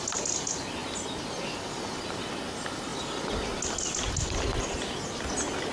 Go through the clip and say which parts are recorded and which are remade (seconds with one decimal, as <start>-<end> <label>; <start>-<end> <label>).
0.0-5.7 recorded